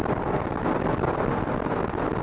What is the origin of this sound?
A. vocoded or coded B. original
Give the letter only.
B